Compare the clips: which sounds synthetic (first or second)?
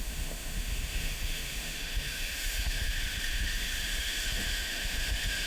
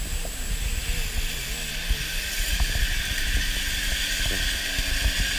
first